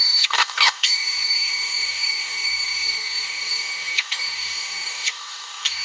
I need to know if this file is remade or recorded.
remade